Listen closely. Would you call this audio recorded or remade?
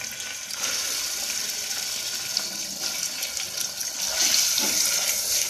recorded